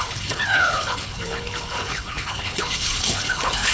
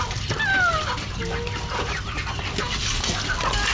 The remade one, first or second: first